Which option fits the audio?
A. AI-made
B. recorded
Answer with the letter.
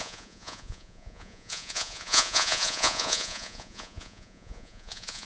A